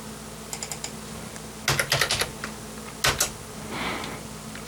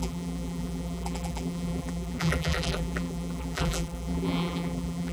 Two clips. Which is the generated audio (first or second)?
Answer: second